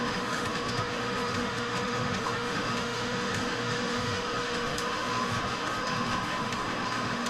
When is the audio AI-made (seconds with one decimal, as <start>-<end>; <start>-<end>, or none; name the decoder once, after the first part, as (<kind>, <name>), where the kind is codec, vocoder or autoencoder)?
0.0-7.3 (autoencoder, DAC-VAE)